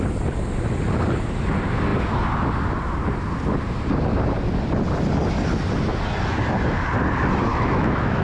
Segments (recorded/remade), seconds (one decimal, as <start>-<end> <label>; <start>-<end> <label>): 0.0-7.5 recorded; 7.5-8.2 remade